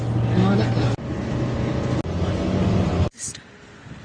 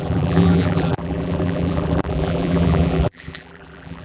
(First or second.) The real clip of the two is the first